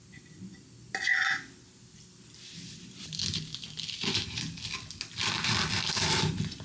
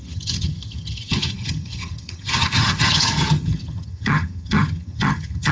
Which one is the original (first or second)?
first